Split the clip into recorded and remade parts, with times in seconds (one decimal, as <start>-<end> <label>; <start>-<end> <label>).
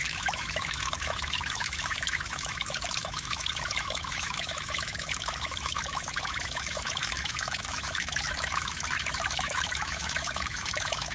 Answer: 0.0-11.1 remade